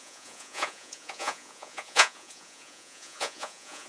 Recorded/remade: remade